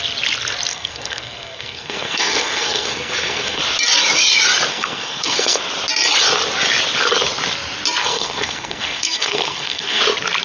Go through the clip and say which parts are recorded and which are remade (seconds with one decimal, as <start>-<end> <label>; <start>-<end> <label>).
0.0-0.7 recorded; 0.7-3.6 remade; 3.6-4.7 recorded; 4.7-5.6 remade; 5.6-8.0 recorded; 8.0-10.0 remade; 10.0-10.4 recorded